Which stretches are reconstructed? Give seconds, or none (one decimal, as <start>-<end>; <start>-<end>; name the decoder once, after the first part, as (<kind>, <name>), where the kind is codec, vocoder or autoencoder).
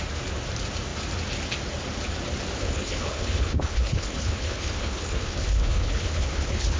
2.6-6.8 (codec, HILCodec)